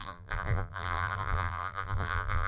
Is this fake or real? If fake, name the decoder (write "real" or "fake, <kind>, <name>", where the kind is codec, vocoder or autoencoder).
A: fake, vocoder, BigVGAN v2